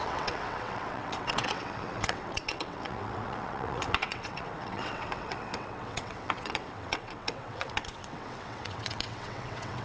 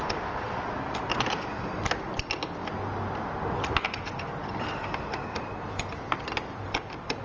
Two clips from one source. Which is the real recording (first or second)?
second